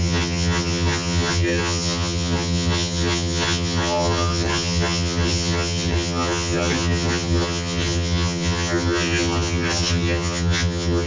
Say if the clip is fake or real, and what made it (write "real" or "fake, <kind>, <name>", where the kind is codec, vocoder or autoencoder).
fake, vocoder, HiFi-GAN